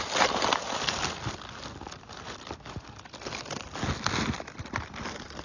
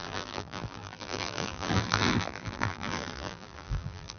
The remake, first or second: second